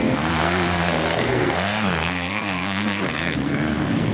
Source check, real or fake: fake